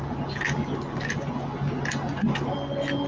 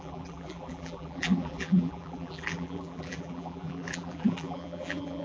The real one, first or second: first